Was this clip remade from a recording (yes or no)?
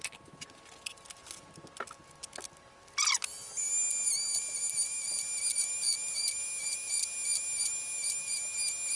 no